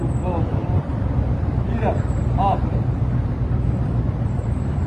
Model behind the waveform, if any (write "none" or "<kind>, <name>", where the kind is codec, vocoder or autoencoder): vocoder, BigVGAN v2